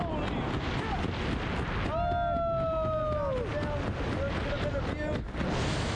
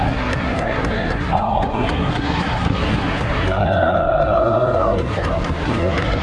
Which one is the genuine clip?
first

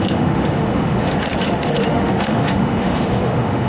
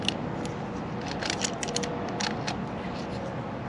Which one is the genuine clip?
second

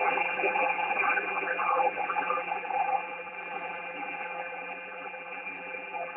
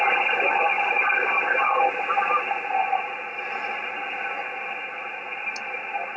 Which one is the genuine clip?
second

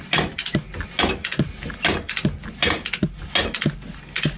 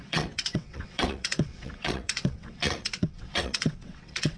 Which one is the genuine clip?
first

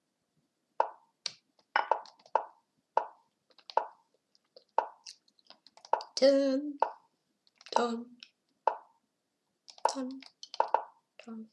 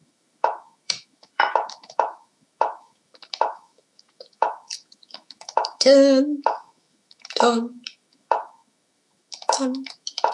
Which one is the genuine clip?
first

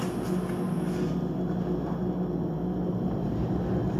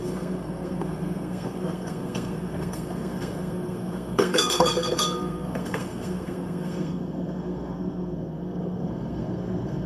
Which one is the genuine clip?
first